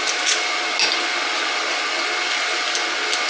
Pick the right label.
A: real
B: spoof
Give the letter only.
A